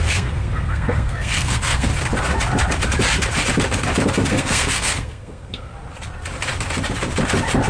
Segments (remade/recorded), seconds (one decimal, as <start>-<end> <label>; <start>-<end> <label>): 0.0-1.9 remade; 1.9-4.3 recorded; 4.3-5.7 remade; 5.7-7.7 recorded